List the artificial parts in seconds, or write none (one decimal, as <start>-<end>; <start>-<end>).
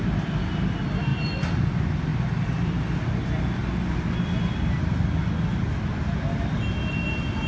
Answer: none